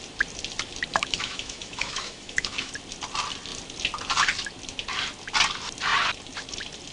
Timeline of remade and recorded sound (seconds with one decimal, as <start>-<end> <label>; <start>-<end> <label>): 0.0-0.9 recorded; 0.9-2.7 remade; 2.7-6.9 recorded